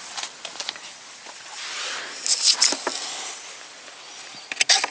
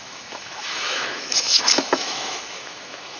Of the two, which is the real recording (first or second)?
first